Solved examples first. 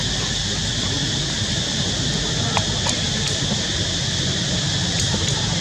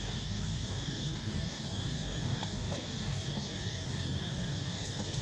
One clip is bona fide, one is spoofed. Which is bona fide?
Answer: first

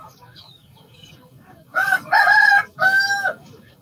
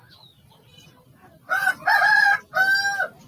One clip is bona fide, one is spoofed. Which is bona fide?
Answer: second